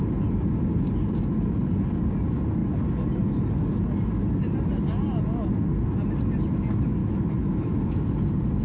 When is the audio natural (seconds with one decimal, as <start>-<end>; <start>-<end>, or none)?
0.0-7.0; 8.1-8.6